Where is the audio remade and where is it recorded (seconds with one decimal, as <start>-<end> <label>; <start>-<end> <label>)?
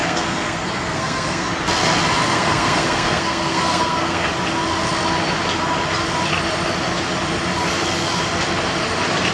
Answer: 0.0-1.5 remade; 1.5-2.3 recorded; 2.3-4.3 remade; 4.3-9.3 recorded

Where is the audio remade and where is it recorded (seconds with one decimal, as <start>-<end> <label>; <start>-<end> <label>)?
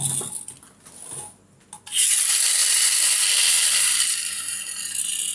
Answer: 0.0-2.6 recorded; 2.6-4.6 remade; 4.6-5.3 recorded